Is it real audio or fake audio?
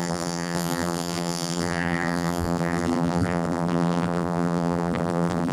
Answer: fake